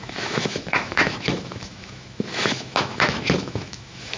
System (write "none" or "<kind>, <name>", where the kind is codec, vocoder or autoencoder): autoencoder, DAC-VAE